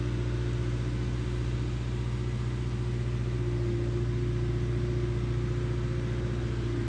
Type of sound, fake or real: real